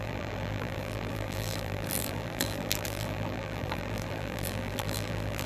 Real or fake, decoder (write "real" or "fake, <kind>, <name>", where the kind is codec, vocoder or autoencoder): fake, vocoder, BigVGAN v2